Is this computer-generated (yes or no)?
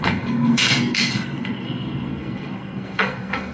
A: yes